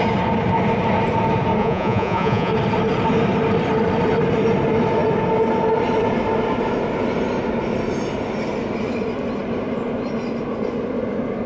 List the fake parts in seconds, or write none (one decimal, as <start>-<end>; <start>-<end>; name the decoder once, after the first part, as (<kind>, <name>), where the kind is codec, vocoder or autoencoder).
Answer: 1.6-2.5 (vocoder, Vocos)